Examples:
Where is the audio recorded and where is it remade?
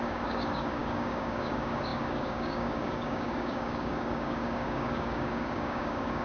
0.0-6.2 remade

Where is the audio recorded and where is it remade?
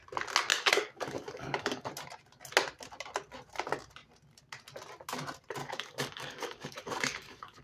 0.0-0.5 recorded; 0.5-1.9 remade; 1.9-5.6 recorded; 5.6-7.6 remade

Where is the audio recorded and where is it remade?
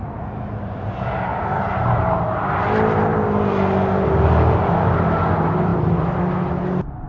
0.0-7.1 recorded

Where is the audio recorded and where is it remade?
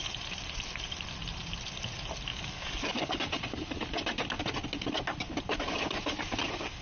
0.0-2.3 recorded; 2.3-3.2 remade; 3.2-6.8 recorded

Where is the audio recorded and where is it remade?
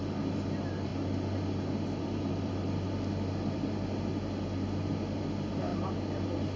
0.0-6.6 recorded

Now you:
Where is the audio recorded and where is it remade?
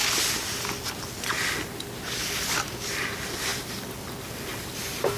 0.0-5.2 recorded